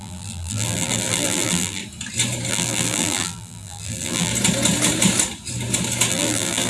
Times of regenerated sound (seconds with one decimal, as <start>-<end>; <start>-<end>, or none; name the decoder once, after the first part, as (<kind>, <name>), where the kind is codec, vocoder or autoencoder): 0.0-1.8 (vocoder, BigVGAN v2); 2.5-4.3; 6.1-6.7